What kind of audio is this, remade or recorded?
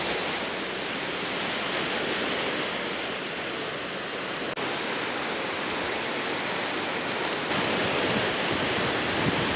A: recorded